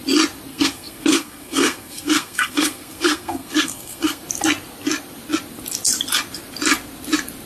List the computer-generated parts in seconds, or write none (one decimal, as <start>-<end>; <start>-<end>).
0.5-4.2